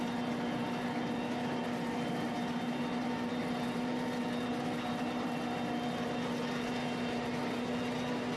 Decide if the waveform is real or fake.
real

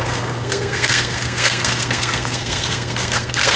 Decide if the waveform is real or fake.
fake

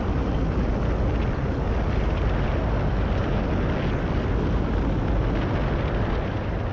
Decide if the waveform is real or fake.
real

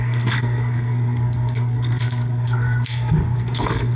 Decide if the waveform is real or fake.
fake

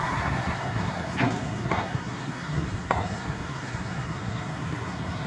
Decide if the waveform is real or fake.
fake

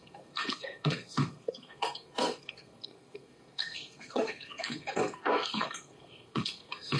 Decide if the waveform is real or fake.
fake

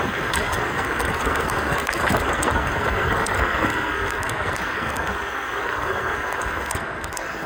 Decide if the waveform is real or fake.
fake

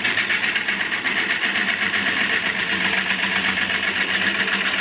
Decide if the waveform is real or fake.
real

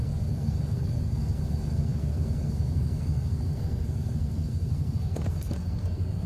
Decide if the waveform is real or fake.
fake